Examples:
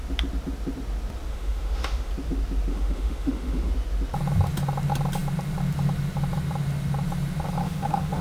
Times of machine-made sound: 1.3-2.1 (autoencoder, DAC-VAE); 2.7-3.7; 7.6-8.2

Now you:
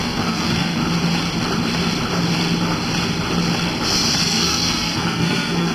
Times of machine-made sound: 0.0-0.8 (codec, SNAC); 4.2-5.7

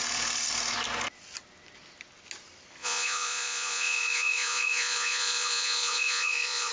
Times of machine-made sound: 2.8-6.7 (vocoder, Vocos)

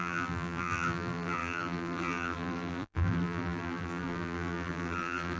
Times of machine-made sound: 0.0-5.4 (vocoder, BigVGAN v2)

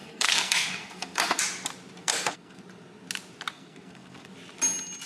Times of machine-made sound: 0.0-1.4 (codec, SNAC); 2.0-2.6; 3.5-4.3